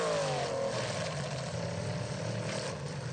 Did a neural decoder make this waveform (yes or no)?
no